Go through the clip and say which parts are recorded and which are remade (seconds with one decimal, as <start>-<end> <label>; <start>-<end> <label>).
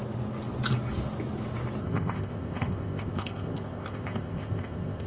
0.0-1.8 recorded; 1.8-5.1 remade